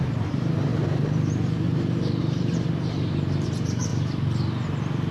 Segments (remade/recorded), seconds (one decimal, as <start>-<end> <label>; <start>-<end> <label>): 0.0-3.9 remade; 3.9-5.1 recorded